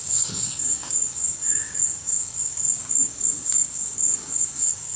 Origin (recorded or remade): remade